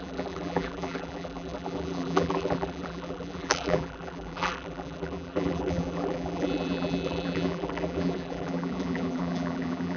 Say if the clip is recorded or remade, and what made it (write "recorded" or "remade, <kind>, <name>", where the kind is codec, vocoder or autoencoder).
remade, vocoder, BigVGAN v2